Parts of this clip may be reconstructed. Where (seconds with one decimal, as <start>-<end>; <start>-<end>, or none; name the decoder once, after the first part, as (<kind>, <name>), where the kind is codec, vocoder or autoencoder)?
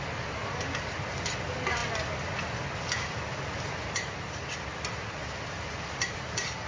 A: none